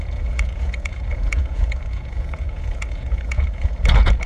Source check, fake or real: fake